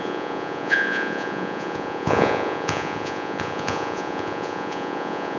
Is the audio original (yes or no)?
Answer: no